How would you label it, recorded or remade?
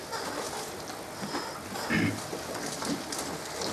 recorded